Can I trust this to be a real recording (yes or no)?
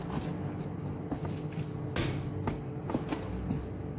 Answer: yes